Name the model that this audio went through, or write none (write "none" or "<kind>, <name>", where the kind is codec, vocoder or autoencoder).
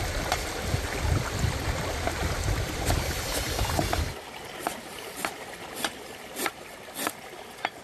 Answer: vocoder, BigVGAN v2